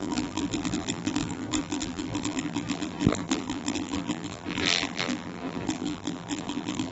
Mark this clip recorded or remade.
remade